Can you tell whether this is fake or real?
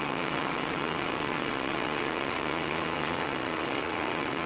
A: fake